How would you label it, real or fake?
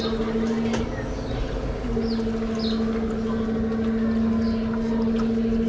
real